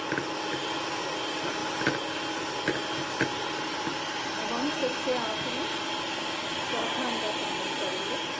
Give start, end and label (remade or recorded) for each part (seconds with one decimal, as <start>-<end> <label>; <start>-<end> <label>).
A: 0.0-8.4 recorded